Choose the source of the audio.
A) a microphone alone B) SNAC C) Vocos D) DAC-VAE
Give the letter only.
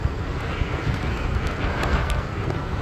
B